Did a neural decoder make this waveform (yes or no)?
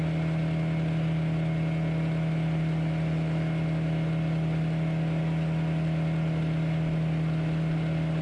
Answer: no